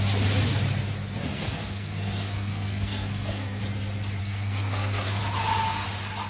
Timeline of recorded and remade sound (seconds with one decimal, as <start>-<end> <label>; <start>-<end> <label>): 0.0-1.2 recorded; 1.2-3.6 remade; 3.6-4.2 recorded; 4.2-5.2 remade; 5.2-6.3 recorded